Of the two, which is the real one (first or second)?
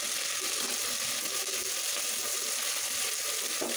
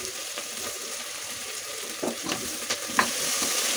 first